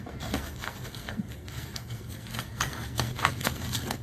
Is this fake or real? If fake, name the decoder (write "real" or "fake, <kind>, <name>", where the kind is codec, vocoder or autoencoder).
fake, codec, SNAC